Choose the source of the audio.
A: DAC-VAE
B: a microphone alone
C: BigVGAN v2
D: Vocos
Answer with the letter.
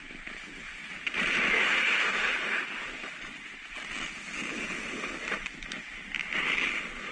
B